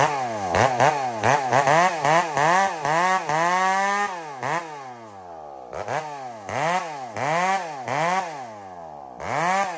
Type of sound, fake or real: real